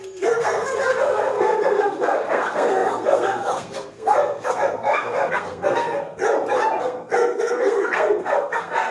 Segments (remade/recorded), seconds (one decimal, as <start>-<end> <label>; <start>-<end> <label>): 0.0-6.2 remade; 6.2-6.8 recorded; 6.8-8.9 remade